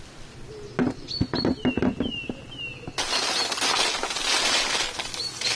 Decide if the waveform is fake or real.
real